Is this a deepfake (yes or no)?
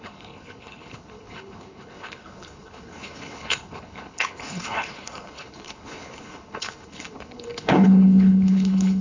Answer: yes